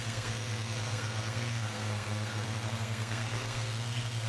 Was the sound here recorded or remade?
remade